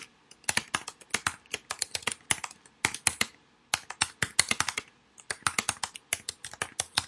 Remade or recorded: recorded